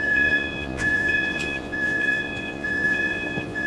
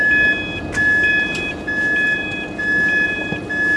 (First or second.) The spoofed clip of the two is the first